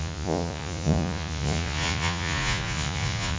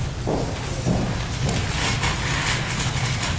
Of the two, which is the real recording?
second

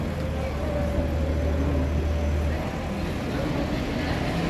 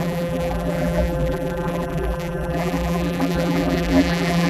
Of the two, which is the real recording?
first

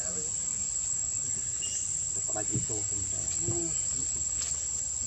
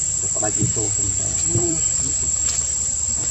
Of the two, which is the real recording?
first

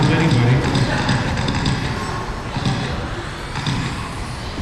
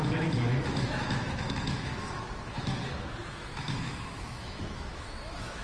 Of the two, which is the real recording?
first